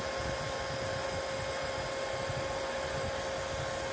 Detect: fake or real real